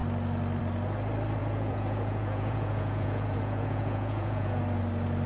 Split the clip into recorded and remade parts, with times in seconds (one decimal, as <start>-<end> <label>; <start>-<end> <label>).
0.0-1.4 recorded; 1.4-4.6 remade; 4.6-5.3 recorded

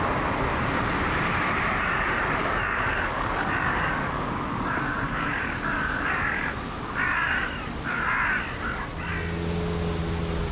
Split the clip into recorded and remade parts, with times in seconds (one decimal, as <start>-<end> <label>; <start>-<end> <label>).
0.0-2.4 recorded; 2.4-6.8 remade; 6.8-10.5 recorded